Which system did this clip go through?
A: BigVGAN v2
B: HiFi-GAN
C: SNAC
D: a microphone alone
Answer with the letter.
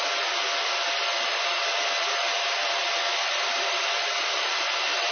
A